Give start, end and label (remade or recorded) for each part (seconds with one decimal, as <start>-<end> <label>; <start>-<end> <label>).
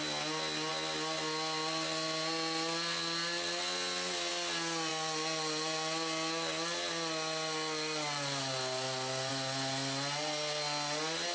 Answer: 0.0-11.3 recorded